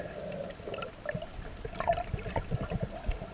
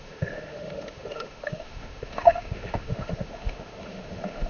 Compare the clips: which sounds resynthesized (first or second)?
second